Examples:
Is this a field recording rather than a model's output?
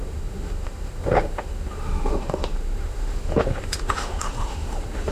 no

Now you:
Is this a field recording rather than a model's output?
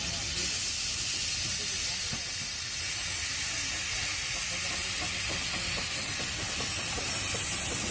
yes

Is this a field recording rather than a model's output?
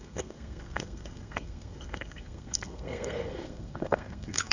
no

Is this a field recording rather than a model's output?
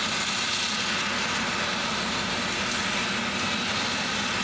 yes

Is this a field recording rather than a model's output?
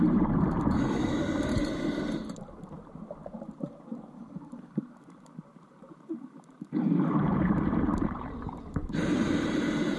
no